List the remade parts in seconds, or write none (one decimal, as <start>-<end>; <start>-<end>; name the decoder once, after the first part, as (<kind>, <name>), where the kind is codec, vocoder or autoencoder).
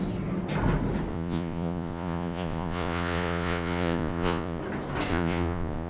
1.1-4.6 (vocoder, Vocos); 5.1-5.9